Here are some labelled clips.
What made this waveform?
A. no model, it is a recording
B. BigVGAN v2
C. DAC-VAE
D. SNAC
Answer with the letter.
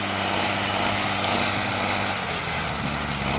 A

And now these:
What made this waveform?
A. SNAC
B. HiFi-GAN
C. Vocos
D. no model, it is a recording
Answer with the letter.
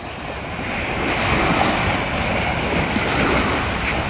D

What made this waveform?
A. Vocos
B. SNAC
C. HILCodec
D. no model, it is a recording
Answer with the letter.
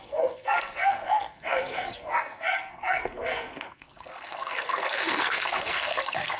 B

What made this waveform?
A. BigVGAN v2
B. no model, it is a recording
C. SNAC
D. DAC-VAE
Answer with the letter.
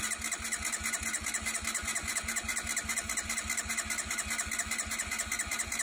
B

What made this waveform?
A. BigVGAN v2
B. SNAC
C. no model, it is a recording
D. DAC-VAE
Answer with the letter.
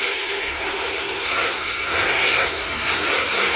B